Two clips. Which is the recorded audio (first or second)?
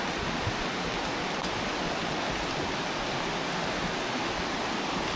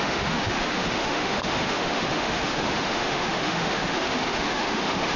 first